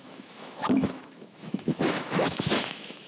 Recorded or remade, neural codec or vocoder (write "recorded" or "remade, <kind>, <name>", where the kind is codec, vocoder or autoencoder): remade, autoencoder, DAC-VAE